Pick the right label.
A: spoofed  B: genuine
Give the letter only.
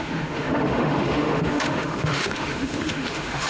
A